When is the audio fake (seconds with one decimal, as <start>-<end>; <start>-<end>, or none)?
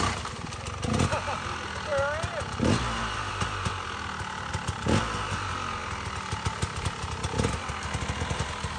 none